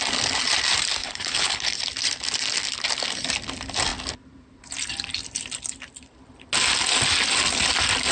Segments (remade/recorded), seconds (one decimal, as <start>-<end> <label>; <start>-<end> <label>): 0.0-1.0 recorded; 1.0-1.8 remade; 1.8-8.1 recorded